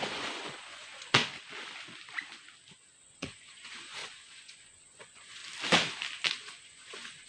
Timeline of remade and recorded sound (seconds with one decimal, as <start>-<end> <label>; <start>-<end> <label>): 0.0-1.2 remade; 1.2-3.0 recorded; 3.0-5.4 remade; 5.4-6.3 recorded; 6.3-7.3 remade

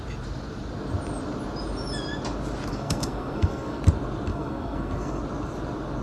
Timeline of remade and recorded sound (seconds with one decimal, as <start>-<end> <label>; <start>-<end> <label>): 0.0-2.7 recorded; 2.7-3.8 remade; 3.8-4.3 recorded; 4.3-5.2 remade; 5.2-6.0 recorded

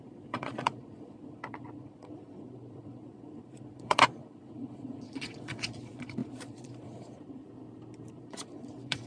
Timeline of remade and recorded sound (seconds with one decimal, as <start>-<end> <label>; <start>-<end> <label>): 0.0-7.4 remade; 7.4-8.1 recorded; 8.1-9.1 remade

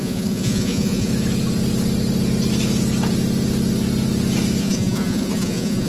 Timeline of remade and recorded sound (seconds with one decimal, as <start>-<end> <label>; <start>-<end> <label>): 0.0-1.1 remade; 1.1-4.6 recorded; 4.6-5.9 remade

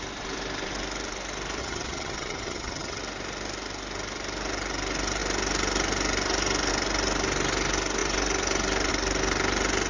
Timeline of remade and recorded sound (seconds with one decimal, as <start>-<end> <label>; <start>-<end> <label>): 0.0-1.6 recorded; 1.6-3.0 remade; 3.0-9.9 recorded

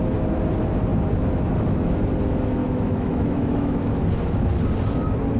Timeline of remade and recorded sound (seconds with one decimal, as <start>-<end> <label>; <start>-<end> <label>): 0.0-2.6 recorded; 2.6-4.0 remade; 4.0-5.4 recorded